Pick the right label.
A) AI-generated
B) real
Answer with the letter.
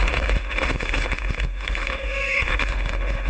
A